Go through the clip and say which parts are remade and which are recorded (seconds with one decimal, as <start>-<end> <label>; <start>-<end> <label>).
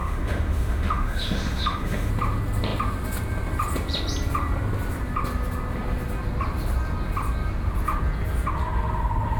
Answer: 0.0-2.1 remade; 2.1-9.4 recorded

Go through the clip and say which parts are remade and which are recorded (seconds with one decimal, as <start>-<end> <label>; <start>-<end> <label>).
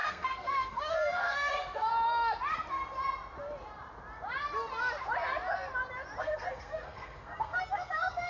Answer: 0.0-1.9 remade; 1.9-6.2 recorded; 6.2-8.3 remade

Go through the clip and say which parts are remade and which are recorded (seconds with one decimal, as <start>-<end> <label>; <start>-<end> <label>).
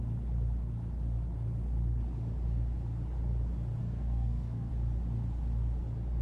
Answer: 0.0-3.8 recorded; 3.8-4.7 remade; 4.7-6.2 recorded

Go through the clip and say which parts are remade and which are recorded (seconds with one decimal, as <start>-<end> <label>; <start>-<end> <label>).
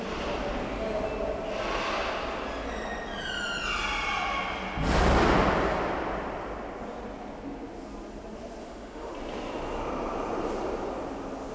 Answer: 0.0-8.6 recorded; 8.6-9.1 remade; 9.1-11.5 recorded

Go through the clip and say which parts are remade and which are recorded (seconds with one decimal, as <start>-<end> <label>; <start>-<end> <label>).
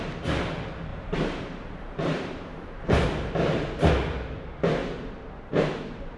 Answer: 0.0-0.9 recorded; 0.9-3.9 remade; 3.9-4.8 recorded; 4.8-6.2 remade